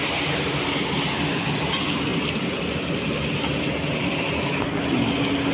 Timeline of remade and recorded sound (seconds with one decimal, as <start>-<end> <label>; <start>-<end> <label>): 0.0-5.5 recorded